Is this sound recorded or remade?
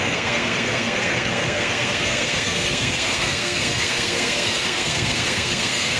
remade